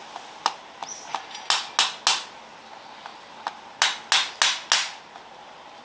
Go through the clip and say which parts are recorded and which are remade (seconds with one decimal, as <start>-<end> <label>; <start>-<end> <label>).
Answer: 0.0-5.8 recorded